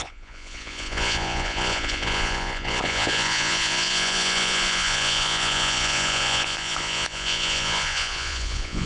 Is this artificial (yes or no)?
yes